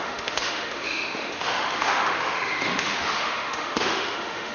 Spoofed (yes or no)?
yes